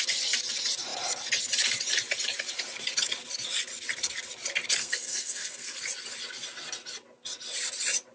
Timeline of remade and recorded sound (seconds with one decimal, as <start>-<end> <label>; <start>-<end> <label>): 0.0-4.8 recorded; 4.8-5.8 remade; 5.8-8.1 recorded